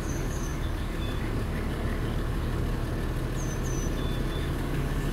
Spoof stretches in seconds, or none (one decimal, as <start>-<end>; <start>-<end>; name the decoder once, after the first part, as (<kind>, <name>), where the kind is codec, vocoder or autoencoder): 0.0-2.8 (codec, DAC); 4.4-5.1